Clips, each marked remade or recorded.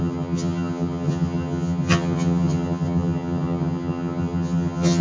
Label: remade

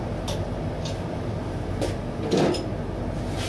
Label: recorded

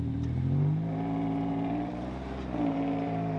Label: remade